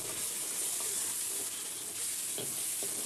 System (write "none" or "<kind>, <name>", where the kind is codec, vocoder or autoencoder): none